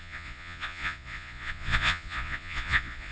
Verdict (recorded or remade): remade